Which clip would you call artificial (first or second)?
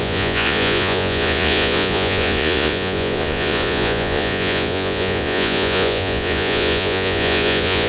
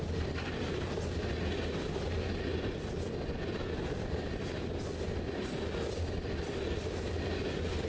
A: first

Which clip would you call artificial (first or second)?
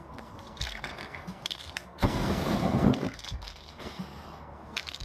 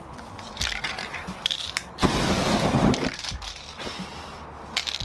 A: first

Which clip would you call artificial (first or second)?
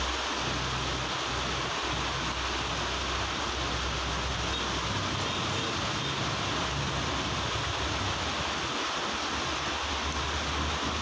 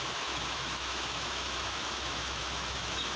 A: second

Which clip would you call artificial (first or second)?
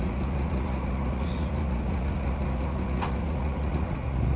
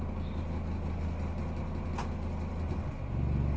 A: first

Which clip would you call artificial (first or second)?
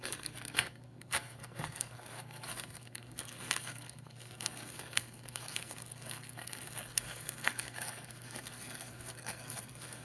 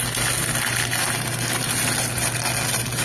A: first